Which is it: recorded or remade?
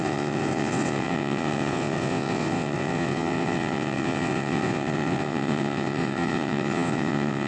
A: remade